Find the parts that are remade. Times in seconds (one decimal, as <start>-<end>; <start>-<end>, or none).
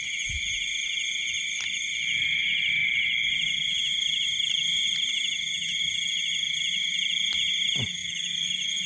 8.0-8.5